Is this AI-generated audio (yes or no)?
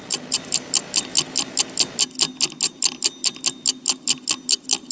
no